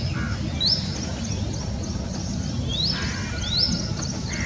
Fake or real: real